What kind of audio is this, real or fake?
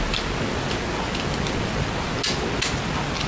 real